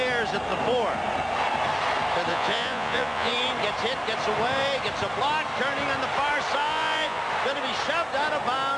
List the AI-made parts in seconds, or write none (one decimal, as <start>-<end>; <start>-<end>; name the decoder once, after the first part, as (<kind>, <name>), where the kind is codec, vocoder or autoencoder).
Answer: 2.3-3.3 (vocoder, Vocos); 6.6-7.2

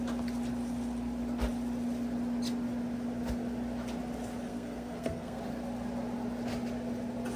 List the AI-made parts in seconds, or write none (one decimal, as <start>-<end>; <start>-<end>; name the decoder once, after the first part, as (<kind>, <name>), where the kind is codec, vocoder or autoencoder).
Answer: 4.5-5.4 (codec, SNAC)